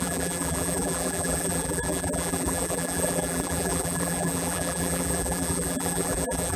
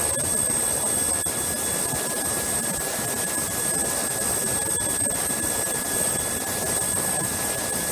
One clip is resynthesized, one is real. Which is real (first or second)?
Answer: second